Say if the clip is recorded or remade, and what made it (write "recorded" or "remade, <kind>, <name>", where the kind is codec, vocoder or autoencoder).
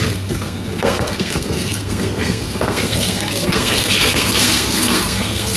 remade, codec, SNAC